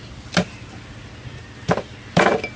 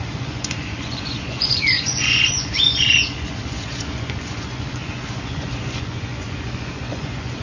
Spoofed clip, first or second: second